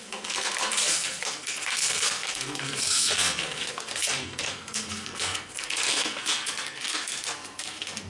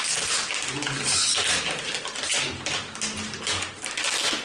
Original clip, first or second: second